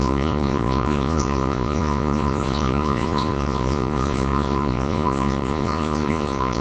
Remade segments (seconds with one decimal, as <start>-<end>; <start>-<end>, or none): 0.0-6.6